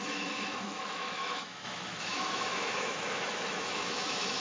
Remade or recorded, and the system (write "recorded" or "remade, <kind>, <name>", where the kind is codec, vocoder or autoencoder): remade, autoencoder, DAC-VAE